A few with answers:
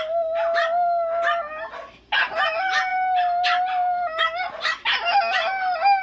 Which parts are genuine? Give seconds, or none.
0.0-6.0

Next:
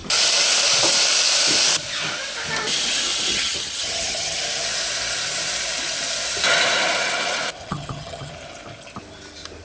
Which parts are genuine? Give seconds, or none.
0.0-3.3; 4.4-7.6; 8.3-9.6